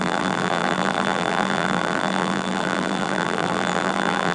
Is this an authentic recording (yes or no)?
no